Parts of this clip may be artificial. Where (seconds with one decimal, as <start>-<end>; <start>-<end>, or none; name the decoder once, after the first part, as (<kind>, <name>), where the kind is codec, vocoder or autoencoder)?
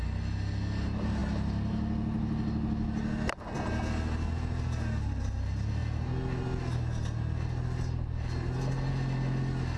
none